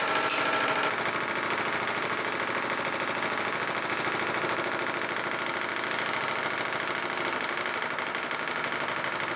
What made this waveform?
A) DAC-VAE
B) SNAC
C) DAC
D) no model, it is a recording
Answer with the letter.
D